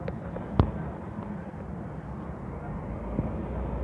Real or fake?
real